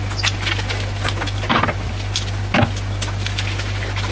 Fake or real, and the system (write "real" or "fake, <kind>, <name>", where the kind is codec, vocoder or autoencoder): real